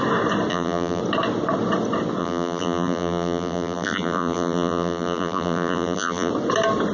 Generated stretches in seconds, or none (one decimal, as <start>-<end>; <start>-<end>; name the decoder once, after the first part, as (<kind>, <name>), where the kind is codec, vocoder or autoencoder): 0.5-1.0 (vocoder, BigVGAN v2); 2.2-6.3